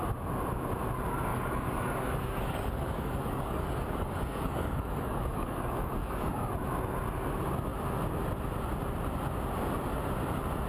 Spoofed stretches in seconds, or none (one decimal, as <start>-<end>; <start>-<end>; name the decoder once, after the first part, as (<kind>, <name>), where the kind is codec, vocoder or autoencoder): 1.3-6.5 (codec, DAC)